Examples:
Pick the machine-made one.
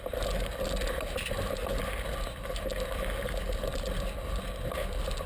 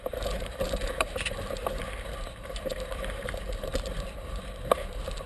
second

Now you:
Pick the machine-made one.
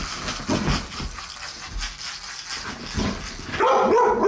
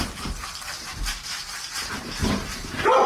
second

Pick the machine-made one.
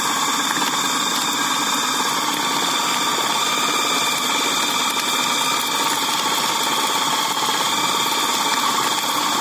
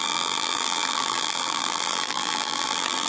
second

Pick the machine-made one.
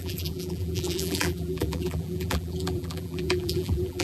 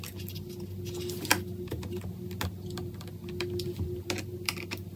first